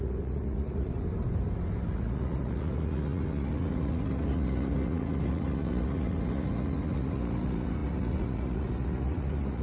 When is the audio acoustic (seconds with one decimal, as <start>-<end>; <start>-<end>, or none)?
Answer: 0.9-1.9